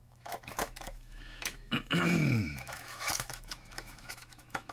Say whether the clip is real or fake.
fake